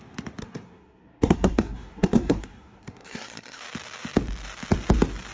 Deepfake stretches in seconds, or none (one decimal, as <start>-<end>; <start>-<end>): 0.4-3.6